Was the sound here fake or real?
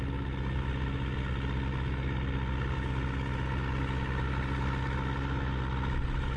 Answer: real